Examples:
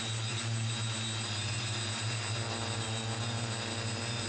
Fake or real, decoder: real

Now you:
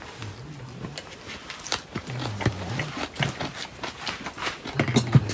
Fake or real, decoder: real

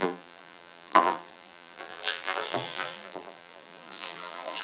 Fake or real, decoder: fake, vocoder, BigVGAN v2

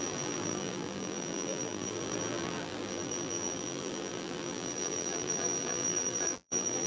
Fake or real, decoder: fake, vocoder, BigVGAN v2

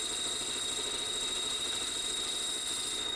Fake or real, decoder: real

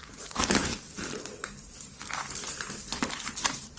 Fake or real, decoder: fake, vocoder, BigVGAN v2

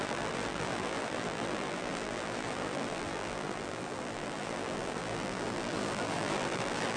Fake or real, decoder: fake, vocoder, BigVGAN v2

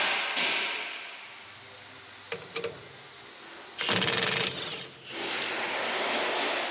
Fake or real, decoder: real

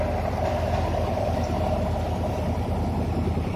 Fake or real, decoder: fake, vocoder, BigVGAN v2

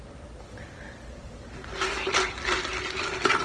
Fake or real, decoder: real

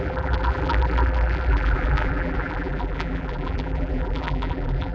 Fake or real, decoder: fake, vocoder, BigVGAN v2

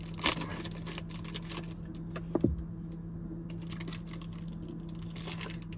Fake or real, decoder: real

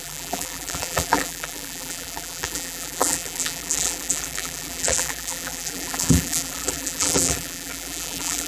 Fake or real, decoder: fake, vocoder, BigVGAN v2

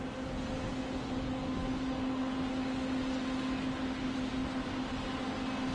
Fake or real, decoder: real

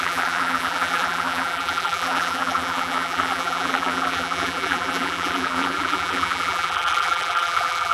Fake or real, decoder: fake, vocoder, BigVGAN v2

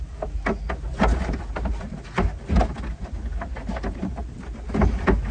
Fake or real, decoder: real